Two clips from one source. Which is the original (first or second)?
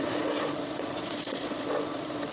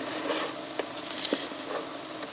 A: second